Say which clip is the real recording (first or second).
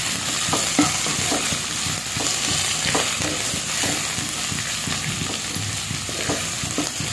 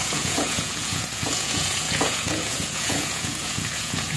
first